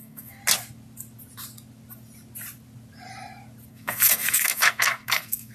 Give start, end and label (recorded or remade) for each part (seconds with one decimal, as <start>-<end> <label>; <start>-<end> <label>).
0.0-0.4 remade; 0.4-3.7 recorded; 3.7-5.5 remade